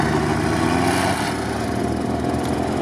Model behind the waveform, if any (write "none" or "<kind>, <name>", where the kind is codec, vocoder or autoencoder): none